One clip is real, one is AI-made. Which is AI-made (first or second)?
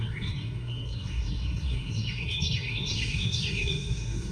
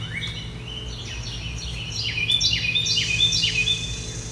first